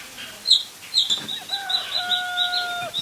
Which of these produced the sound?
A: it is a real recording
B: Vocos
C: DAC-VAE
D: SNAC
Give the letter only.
A